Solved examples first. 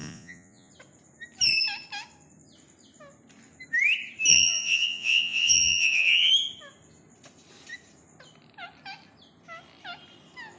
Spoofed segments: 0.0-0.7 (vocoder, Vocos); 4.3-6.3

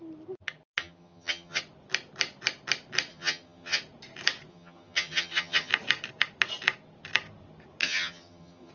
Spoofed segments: 0.8-1.6 (vocoder, HiFi-GAN); 3.1-3.8; 4.5-5.7; 7.8-8.7

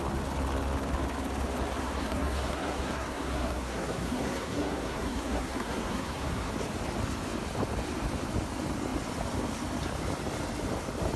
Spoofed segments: 1.8-6.5 (codec, SNAC)

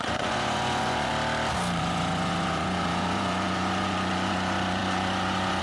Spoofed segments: 0.0-1.1 (vocoder, Vocos); 1.8-5.6

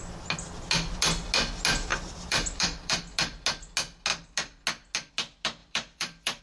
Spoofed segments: 1.9-3.0 (vocoder, BigVGAN v2); 5.6-6.4

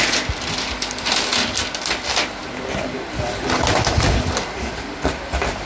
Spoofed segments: none